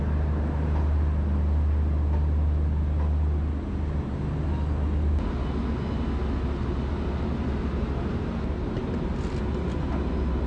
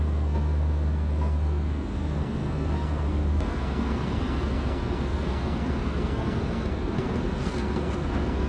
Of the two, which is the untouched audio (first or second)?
first